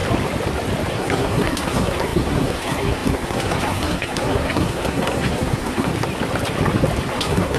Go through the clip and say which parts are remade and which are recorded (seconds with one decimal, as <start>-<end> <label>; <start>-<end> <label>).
0.0-0.9 recorded; 0.9-5.9 remade; 5.9-7.1 recorded; 7.1-7.6 remade

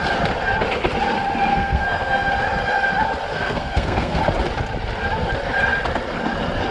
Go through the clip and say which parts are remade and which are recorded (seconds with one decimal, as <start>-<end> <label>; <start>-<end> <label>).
0.0-1.5 recorded; 1.5-2.3 remade; 2.3-3.3 recorded; 3.3-4.2 remade; 4.2-6.7 recorded

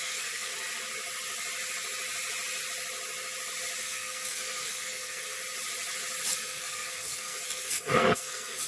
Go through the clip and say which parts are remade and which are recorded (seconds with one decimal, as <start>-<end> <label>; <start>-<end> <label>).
0.0-0.5 remade; 0.5-3.8 recorded; 3.8-5.4 remade; 5.4-6.3 recorded; 6.3-8.7 remade